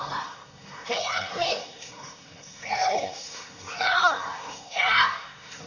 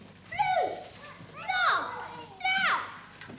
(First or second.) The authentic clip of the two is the second